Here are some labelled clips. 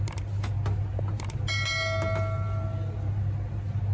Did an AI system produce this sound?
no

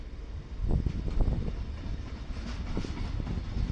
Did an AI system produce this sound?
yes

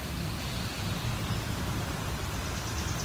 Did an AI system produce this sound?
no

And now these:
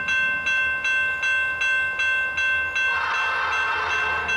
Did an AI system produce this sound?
no